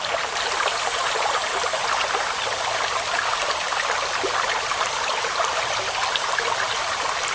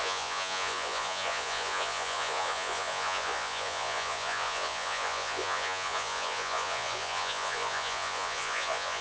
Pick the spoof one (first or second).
second